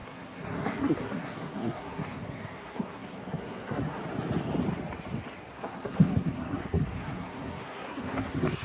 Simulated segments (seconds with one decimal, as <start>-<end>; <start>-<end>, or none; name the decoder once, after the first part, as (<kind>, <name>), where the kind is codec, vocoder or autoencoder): 0.0-4.0 (codec, SNAC); 5.5-8.6